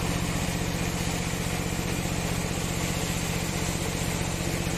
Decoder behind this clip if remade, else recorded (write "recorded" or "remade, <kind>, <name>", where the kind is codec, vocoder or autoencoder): remade, vocoder, BigVGAN v2